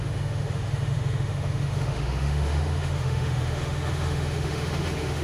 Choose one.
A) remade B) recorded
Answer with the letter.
A